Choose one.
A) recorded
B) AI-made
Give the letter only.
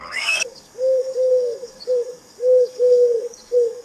B